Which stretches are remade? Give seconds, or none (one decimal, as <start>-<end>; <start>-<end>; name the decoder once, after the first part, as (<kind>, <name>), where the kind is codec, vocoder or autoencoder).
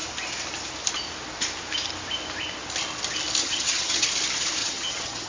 3.4-4.1 (vocoder, HiFi-GAN); 4.6-5.3